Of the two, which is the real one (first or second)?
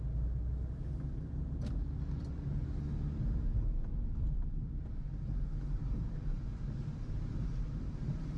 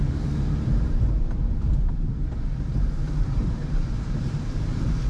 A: first